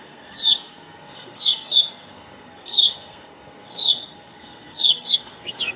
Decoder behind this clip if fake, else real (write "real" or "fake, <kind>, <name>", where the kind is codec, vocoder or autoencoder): fake, codec, SNAC